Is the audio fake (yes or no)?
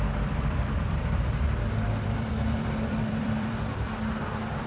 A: yes